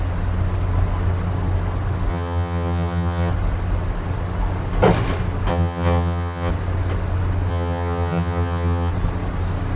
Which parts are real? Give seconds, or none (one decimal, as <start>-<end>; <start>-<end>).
0.0-2.1; 3.3-5.5; 6.5-7.5; 8.9-9.8